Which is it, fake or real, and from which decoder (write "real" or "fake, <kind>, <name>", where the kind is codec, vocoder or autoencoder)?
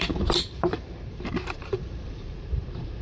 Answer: fake, vocoder, BigVGAN v2